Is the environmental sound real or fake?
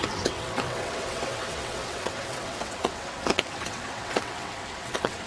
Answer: fake